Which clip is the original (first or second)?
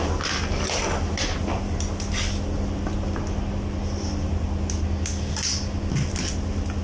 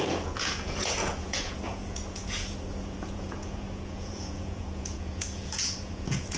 first